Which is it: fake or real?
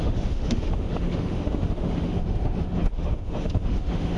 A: fake